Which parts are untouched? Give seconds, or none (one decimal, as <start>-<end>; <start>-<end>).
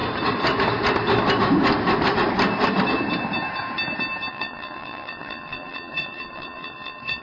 0.0-4.3